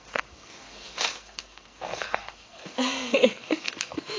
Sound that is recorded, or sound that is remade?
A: remade